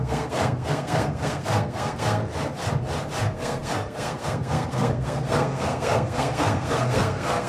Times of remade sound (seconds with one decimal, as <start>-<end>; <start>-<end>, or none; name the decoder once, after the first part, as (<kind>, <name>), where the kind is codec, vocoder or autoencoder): 0.0-2.2 (codec, SNAC); 3.2-7.5

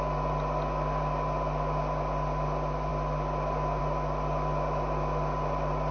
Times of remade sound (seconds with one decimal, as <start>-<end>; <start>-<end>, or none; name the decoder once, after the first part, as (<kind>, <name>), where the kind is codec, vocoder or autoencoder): none

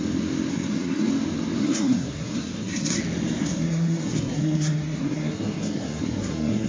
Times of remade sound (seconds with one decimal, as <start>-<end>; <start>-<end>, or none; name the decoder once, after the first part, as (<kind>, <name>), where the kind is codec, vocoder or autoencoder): 0.5-1.1 (codec, SNAC); 1.6-3.0; 3.4-6.7

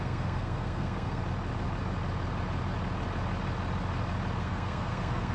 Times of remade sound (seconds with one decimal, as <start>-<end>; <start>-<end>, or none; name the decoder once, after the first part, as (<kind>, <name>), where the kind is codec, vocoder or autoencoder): 0.0-1.2 (codec, SNAC); 4.4-5.3

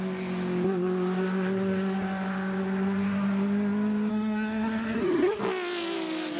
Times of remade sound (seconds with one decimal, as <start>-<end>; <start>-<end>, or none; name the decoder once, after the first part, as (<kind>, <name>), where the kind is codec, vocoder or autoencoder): 4.1-5.4 (codec, SNAC)

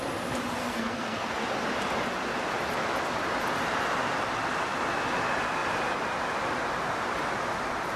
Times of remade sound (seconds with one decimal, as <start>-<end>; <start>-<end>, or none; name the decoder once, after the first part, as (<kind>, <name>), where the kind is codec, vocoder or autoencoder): 0.6-1.3 (codec, SNAC)

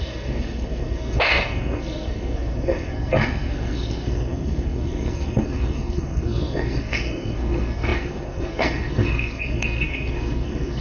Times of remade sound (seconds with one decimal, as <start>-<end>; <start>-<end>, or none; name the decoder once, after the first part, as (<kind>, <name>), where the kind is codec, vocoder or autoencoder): 0.0-10.8 (codec, SNAC)